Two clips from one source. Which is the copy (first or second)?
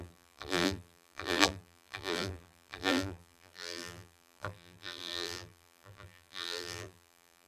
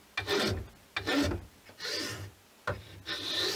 first